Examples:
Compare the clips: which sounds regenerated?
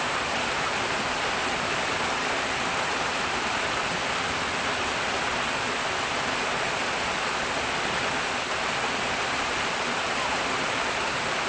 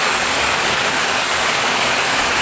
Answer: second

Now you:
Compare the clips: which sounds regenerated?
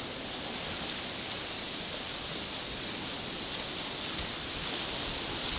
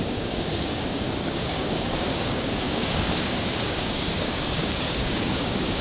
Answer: second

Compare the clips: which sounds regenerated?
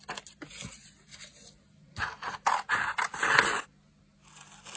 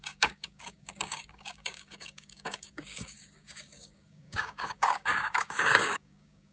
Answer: second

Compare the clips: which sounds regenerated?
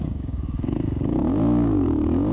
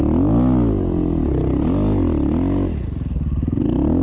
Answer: first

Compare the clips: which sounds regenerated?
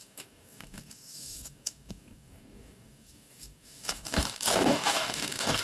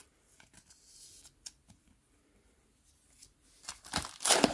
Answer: first